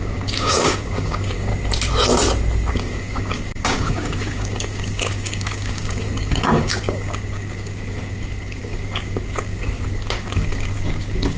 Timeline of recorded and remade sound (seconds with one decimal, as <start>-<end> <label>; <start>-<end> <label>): 0.0-1.5 remade; 1.5-2.7 recorded; 2.7-11.4 remade